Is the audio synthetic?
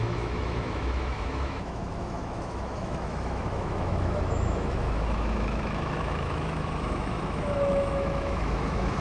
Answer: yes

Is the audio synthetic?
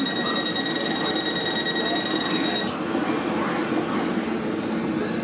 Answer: no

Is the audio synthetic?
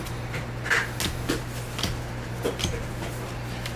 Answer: no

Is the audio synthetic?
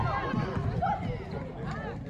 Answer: no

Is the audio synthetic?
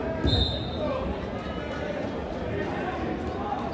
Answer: no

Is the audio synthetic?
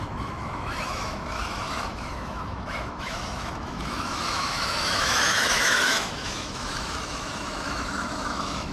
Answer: yes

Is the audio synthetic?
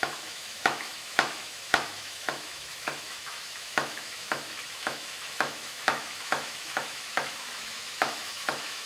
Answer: yes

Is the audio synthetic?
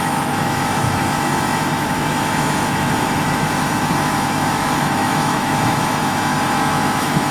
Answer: yes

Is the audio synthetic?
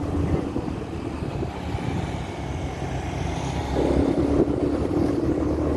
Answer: no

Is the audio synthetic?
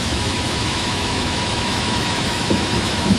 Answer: yes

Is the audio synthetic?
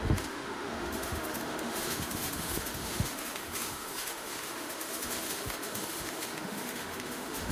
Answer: yes